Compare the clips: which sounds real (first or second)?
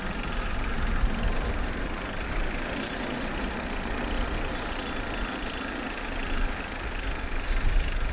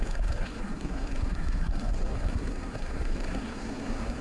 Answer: first